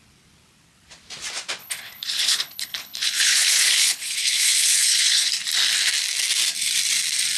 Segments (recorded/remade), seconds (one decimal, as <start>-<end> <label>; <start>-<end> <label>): 0.0-1.6 recorded; 1.6-5.3 remade; 5.3-7.4 recorded